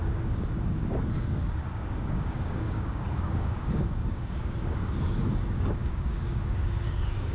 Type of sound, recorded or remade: remade